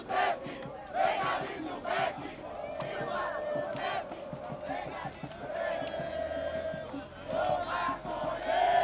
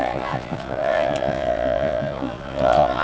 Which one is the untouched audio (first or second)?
first